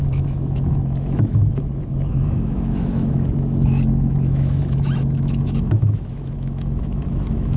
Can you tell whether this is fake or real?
fake